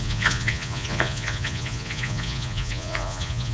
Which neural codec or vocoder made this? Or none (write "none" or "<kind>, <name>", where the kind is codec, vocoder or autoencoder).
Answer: vocoder, Vocos